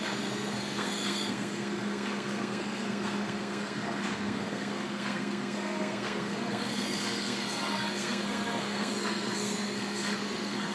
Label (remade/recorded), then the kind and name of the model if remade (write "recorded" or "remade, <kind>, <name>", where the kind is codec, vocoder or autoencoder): remade, codec, SNAC